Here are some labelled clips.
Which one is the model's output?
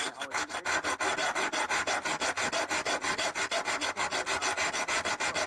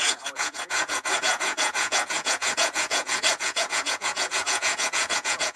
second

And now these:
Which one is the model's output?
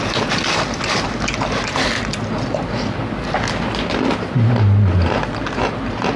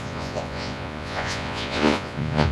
second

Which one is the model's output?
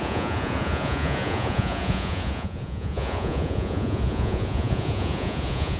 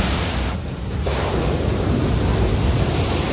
first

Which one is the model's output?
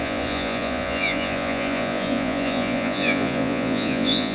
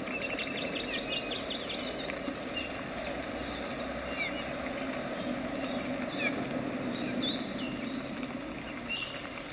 first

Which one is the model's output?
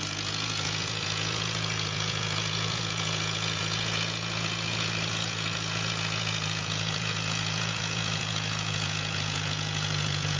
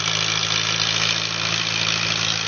first